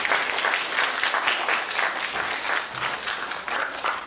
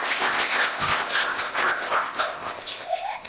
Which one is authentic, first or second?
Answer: first